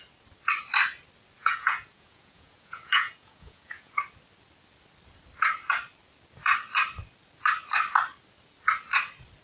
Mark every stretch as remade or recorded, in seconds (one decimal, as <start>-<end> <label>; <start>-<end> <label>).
0.0-1.4 recorded; 1.4-3.9 remade; 3.9-9.4 recorded